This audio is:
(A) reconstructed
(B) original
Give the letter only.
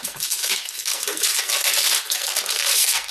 A